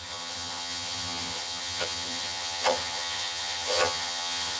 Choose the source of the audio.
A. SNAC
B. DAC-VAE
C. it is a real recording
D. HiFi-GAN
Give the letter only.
D